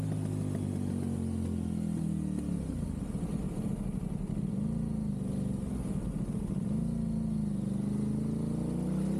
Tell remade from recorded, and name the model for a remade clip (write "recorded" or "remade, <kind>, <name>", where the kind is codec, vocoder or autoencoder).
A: recorded